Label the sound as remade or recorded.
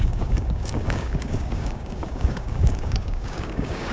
remade